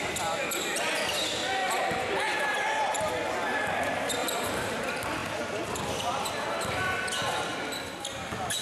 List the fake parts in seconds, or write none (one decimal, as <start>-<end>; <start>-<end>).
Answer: 1.6-3.1; 4.2-4.8